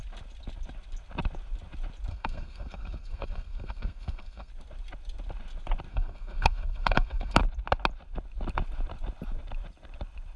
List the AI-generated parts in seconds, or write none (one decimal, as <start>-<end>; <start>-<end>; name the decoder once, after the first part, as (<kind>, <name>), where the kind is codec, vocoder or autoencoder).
2.1-4.5 (codec, SNAC); 5.9-7.4